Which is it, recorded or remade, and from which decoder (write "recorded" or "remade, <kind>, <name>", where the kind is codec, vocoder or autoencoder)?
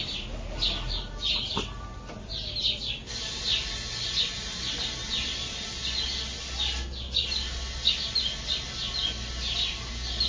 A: recorded